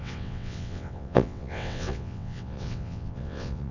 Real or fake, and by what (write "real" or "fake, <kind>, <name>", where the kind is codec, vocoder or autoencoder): fake, vocoder, WaveNeXt